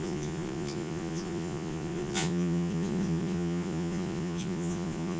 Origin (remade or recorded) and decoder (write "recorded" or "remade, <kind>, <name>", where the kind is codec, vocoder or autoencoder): remade, vocoder, Vocos